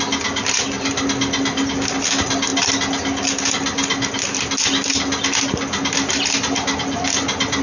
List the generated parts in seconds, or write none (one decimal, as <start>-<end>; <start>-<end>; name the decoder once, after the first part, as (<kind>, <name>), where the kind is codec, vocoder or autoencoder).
none